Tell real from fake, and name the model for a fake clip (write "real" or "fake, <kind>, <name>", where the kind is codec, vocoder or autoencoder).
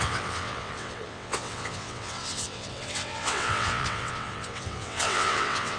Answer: fake, vocoder, WaveNeXt